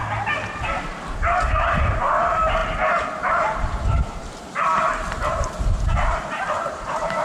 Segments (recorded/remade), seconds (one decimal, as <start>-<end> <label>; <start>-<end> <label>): 0.0-1.1 recorded; 1.1-2.6 remade; 2.6-3.8 recorded; 3.8-7.2 remade